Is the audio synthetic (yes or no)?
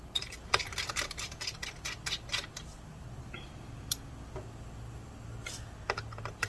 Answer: no